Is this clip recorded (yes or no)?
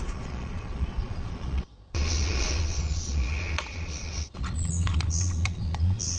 no